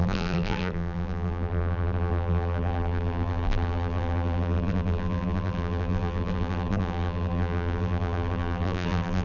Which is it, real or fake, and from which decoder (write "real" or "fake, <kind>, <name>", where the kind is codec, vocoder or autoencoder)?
fake, vocoder, BigVGAN v2